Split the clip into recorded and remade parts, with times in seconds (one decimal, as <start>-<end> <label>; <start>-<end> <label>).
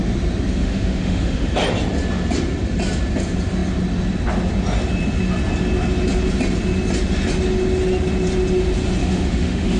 0.0-0.6 recorded; 0.6-1.5 remade; 1.5-9.0 recorded; 9.0-9.8 remade